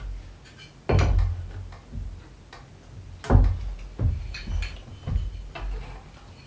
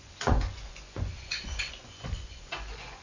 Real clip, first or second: first